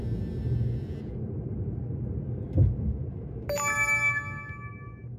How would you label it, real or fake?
real